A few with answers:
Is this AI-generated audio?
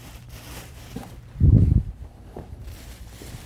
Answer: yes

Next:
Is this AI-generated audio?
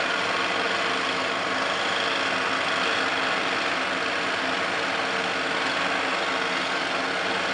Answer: no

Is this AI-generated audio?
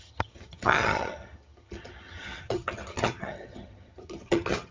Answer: yes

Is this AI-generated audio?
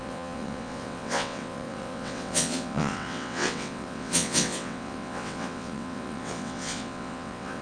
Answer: yes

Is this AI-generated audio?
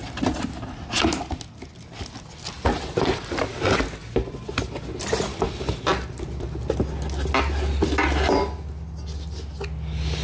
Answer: no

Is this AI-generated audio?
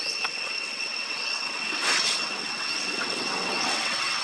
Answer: yes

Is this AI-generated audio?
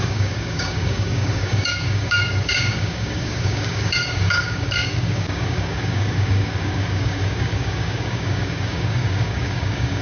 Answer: yes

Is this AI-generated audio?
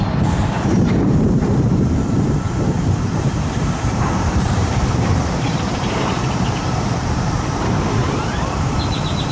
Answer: yes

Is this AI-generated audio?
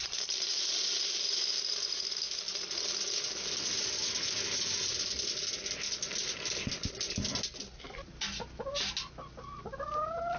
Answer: no